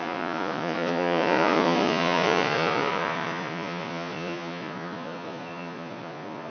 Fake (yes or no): yes